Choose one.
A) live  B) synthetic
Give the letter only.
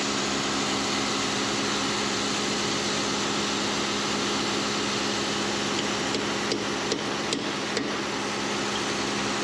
A